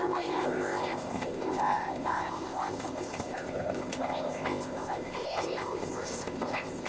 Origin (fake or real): fake